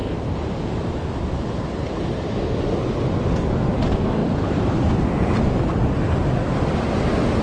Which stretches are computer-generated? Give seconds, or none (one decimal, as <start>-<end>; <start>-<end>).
0.0-1.4; 4.2-4.9